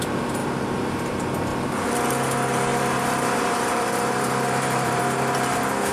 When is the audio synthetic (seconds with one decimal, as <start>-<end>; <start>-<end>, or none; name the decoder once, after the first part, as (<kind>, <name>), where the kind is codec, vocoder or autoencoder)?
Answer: 0.4-1.1 (vocoder, BigVGAN v2); 2.7-5.0